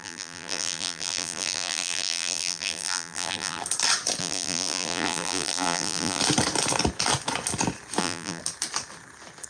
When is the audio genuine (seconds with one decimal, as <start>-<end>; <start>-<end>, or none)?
3.6-4.2; 6.2-8.0; 8.4-9.5